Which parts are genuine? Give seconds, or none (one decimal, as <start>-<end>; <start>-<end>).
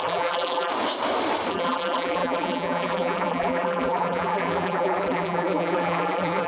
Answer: 0.7-1.5